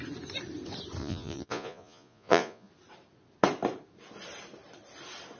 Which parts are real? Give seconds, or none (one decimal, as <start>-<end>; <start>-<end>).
0.0-1.0; 2.7-5.4

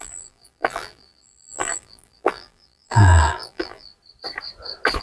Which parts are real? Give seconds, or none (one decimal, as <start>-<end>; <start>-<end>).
3.9-5.0

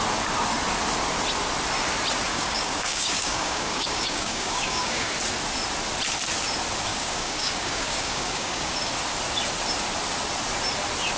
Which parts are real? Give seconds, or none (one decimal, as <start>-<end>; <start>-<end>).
0.0-2.3; 5.1-6.9; 8.7-11.2

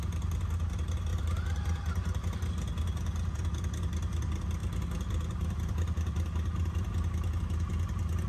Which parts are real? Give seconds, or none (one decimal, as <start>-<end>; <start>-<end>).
0.0-1.1; 2.5-8.3

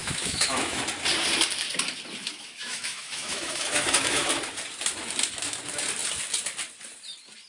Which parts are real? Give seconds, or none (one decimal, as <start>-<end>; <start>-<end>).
0.8-2.2; 4.3-7.5

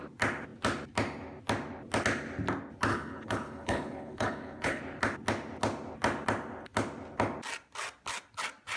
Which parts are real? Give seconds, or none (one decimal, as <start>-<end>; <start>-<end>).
0.0-2.9; 4.8-8.8